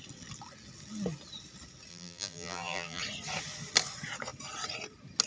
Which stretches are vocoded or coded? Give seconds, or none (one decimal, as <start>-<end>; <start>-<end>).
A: 1.9-3.0